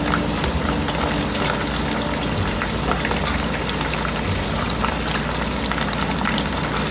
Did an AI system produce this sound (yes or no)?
no